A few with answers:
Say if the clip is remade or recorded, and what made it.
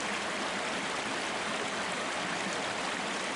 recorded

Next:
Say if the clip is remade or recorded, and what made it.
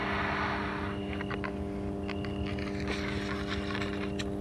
recorded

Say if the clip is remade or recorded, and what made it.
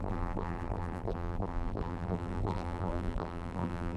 remade, vocoder, BigVGAN v2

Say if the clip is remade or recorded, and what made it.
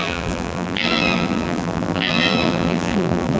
remade, vocoder, BigVGAN v2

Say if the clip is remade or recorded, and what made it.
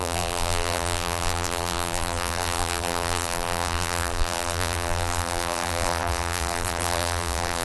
remade, vocoder, BigVGAN v2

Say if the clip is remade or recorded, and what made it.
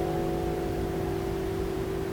remade, vocoder, BigVGAN v2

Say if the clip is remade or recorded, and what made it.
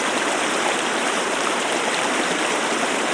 remade, vocoder, BigVGAN v2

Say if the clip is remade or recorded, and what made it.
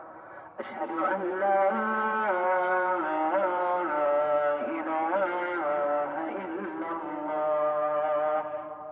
remade, vocoder, BigVGAN v2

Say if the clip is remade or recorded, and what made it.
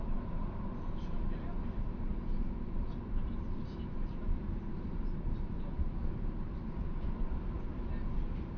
remade, vocoder, BigVGAN v2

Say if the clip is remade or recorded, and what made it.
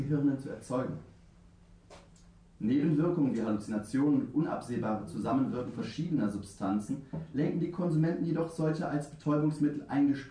recorded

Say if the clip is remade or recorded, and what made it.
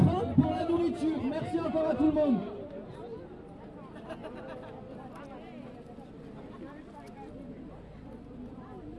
remade, vocoder, BigVGAN v2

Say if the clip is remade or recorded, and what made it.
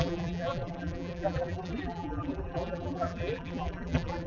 remade, vocoder, BigVGAN v2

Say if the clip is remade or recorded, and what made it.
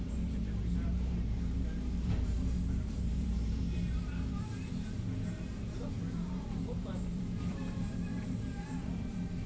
remade, vocoder, BigVGAN v2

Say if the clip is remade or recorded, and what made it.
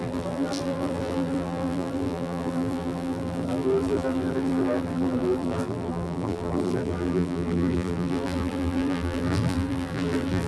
remade, vocoder, BigVGAN v2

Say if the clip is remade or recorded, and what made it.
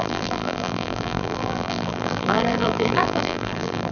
remade, vocoder, BigVGAN v2